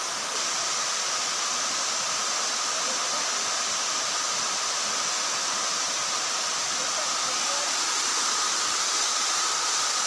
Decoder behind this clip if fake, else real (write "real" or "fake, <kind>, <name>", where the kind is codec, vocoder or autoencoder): real